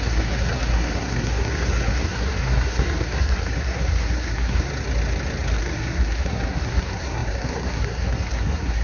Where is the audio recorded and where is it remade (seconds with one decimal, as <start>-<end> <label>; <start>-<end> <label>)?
0.0-4.7 remade; 4.7-5.6 recorded; 5.6-8.8 remade